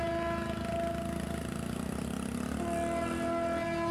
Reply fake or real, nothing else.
real